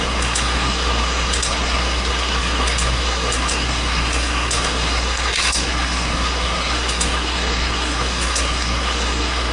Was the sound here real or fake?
fake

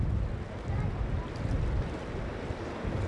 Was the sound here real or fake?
real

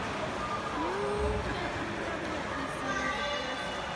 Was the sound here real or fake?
real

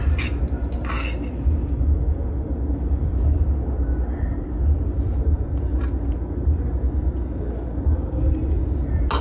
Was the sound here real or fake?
real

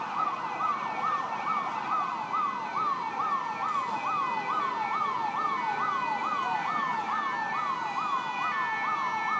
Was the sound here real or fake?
real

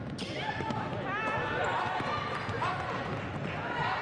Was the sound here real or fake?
real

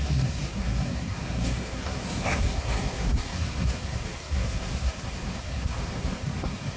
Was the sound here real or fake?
fake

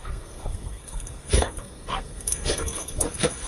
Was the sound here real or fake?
fake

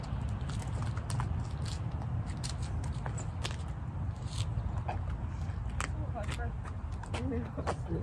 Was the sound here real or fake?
real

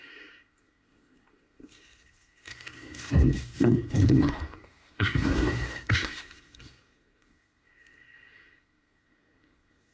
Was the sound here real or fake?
fake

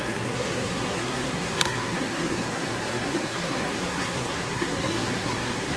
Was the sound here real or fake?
fake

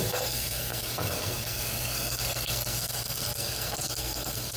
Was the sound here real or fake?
fake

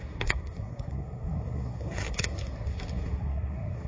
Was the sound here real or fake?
fake